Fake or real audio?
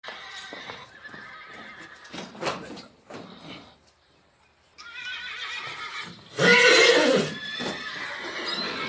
real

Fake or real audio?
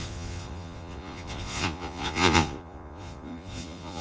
fake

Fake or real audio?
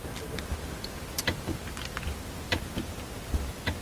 real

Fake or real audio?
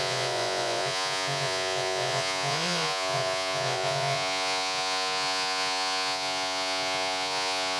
fake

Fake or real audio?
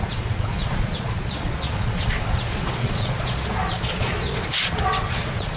fake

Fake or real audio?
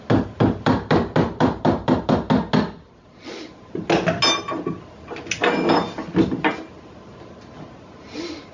real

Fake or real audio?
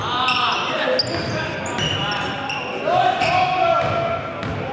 real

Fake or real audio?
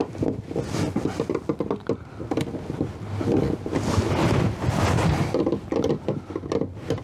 real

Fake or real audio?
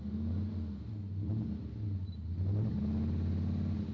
real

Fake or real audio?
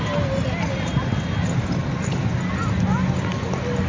real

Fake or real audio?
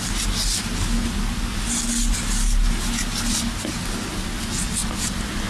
real